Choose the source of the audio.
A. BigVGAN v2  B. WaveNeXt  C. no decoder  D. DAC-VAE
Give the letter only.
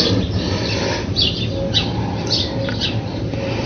C